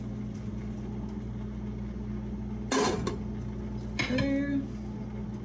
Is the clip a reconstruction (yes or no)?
no